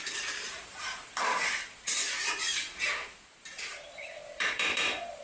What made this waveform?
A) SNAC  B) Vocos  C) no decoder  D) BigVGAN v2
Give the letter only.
D